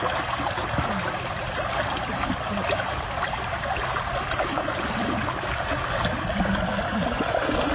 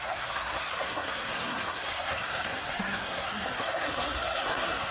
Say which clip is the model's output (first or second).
second